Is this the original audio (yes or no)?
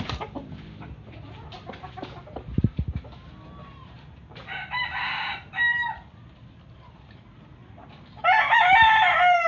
yes